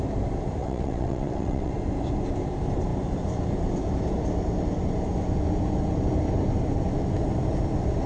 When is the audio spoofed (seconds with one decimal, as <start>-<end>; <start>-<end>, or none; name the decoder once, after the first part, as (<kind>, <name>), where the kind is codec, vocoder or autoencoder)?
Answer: 0.6-1.7 (vocoder, WaveNeXt)